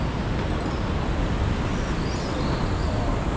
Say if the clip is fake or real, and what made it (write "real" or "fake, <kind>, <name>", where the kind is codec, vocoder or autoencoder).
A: real